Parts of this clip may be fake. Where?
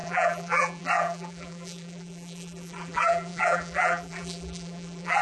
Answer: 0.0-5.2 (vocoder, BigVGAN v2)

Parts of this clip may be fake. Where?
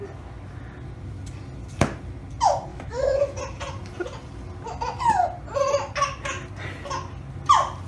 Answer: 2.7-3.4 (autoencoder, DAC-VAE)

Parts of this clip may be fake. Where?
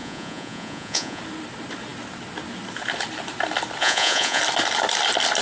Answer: 0.0-1.2 (vocoder, Vocos); 3.8-4.4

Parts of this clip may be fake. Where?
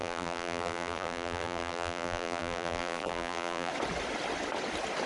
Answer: 0.0-3.7 (vocoder, BigVGAN v2)